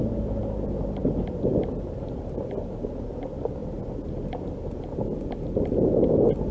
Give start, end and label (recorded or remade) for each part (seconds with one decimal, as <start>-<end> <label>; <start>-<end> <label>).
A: 0.0-6.5 recorded